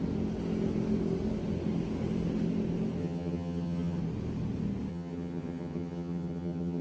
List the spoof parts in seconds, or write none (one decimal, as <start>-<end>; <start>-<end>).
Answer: 3.0-4.0; 4.9-6.8